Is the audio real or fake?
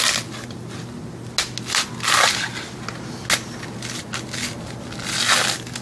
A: real